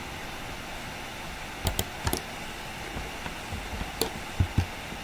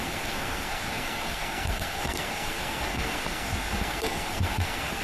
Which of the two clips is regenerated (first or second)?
second